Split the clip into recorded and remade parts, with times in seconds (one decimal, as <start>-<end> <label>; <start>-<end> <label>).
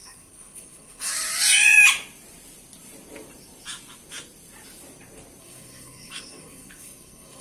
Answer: 0.0-1.1 remade; 1.1-5.4 recorded; 5.4-7.4 remade